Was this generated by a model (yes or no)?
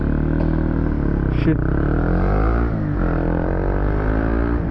no